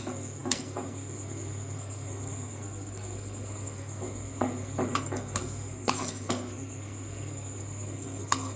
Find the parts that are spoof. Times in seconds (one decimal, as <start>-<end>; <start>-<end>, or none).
0.0-8.6